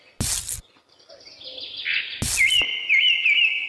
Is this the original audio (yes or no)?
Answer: yes